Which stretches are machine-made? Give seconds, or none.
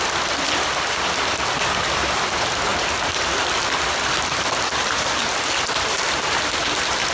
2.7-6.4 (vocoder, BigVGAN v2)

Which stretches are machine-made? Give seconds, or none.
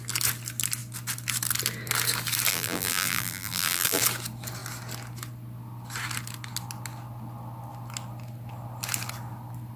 2.5-4.0 (vocoder, BigVGAN v2)